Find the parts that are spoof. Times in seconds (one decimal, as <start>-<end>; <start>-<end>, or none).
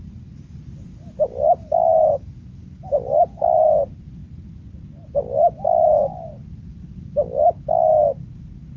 4.2-5.5